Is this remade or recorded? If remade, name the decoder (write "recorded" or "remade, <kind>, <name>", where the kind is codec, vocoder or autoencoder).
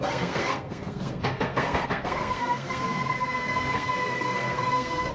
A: remade, codec, SNAC